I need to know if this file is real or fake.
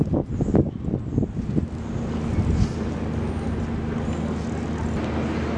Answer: real